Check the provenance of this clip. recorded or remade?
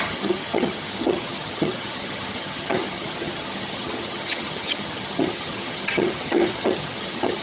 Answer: remade